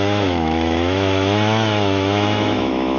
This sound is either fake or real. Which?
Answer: fake